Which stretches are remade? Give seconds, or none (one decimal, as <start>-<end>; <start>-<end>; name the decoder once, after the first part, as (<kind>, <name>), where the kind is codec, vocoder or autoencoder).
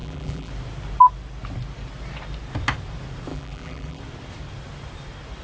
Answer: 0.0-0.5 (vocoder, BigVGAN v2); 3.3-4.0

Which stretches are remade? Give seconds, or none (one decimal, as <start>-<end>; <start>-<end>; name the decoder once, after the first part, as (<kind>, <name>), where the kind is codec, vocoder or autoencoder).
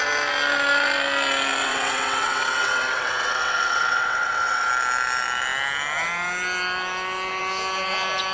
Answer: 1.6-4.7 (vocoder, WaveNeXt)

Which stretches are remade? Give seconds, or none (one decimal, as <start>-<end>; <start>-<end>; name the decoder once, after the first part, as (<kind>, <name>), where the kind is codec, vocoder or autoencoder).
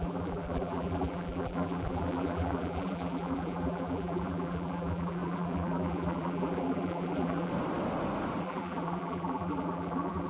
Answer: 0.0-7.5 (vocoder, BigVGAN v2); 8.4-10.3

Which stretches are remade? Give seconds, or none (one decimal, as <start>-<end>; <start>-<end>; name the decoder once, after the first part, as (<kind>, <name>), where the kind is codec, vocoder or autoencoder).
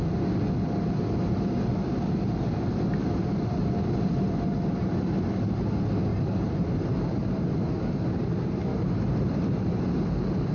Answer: 1.8-2.6 (vocoder, BigVGAN v2); 3.0-5.1; 6.1-7.5; 8.7-9.8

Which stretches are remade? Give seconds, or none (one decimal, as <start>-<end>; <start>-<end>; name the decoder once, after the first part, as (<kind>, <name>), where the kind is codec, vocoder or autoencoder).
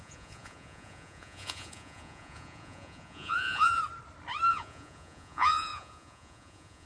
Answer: 0.0-3.8 (vocoder, Vocos); 4.5-6.9